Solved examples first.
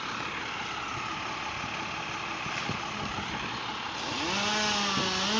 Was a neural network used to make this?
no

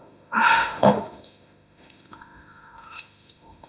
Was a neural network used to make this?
yes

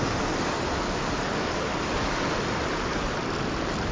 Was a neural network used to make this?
no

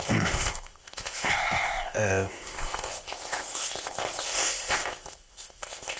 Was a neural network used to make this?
yes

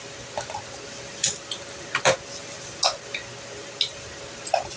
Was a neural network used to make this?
no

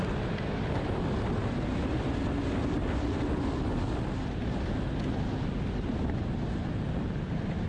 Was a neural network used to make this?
no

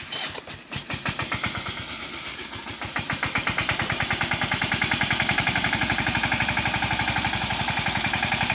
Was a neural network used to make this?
yes